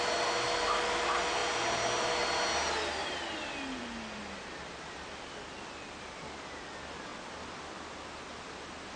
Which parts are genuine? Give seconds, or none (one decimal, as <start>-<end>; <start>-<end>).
0.0-9.0